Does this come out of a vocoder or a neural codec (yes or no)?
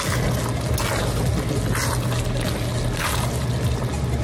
no